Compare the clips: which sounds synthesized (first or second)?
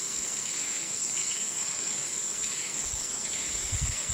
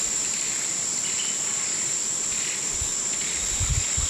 first